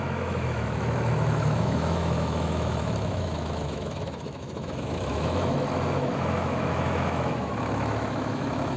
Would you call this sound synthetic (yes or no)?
yes